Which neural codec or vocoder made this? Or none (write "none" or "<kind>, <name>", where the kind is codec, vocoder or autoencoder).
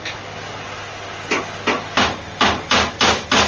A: none